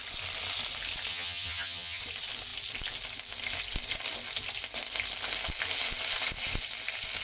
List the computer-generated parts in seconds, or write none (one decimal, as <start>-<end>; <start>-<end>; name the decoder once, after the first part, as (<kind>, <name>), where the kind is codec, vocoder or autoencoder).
1.1-2.0 (vocoder, HiFi-GAN)